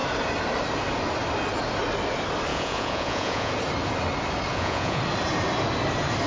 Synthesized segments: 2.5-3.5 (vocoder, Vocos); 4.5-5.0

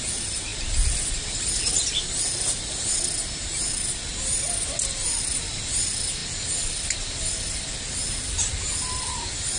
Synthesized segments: none